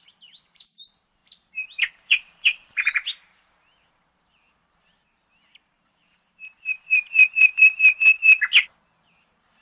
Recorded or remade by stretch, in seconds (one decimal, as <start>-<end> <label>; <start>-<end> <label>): 0.0-1.2 remade; 1.2-1.9 recorded; 1.9-8.2 remade; 8.2-9.2 recorded; 9.2-9.6 remade

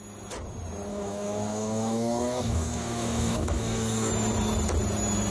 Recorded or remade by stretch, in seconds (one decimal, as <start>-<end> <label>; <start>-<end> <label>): 0.0-0.9 recorded; 0.9-4.1 remade; 4.1-5.3 recorded

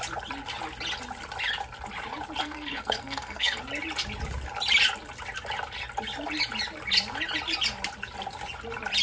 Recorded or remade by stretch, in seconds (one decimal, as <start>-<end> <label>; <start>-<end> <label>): 0.0-2.4 recorded; 2.4-3.6 remade; 3.6-9.0 recorded

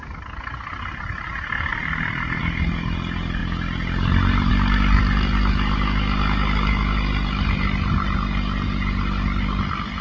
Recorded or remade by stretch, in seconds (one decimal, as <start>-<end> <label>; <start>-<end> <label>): 0.0-1.7 recorded; 1.7-2.4 remade; 2.4-10.0 recorded

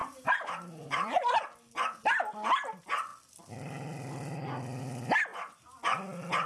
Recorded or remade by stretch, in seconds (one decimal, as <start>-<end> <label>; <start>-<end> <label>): 0.0-1.4 remade; 1.4-5.3 recorded; 5.3-5.8 remade; 5.8-6.5 recorded